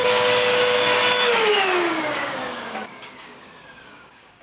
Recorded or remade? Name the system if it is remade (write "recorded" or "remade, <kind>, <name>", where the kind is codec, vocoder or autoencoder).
remade, codec, DAC